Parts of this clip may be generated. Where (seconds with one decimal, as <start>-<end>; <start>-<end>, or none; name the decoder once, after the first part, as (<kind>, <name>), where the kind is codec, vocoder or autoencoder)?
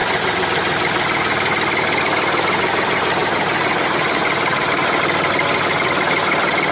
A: 2.0-6.7 (vocoder, BigVGAN v2)